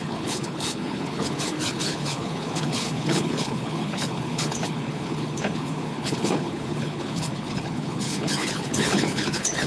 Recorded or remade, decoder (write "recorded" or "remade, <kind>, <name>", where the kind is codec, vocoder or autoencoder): remade, codec, HILCodec